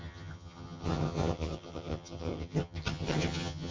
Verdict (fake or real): fake